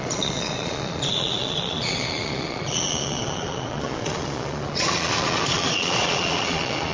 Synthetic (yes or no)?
yes